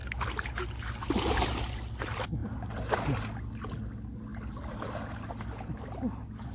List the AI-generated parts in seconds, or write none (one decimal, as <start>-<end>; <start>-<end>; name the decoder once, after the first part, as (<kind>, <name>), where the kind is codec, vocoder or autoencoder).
none